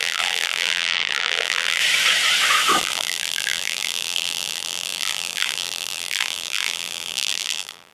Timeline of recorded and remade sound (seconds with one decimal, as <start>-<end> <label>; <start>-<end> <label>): 0.0-1.8 remade; 1.8-2.8 recorded; 2.8-7.9 remade